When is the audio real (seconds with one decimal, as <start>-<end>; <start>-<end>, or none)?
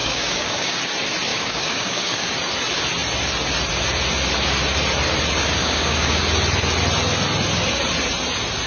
0.8-1.3; 2.3-5.6; 6.2-8.7